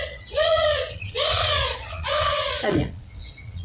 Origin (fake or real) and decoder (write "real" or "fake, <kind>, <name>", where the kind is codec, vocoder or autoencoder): fake, vocoder, Vocos